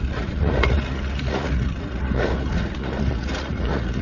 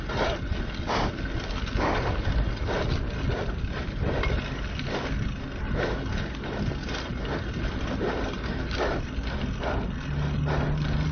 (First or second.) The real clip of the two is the second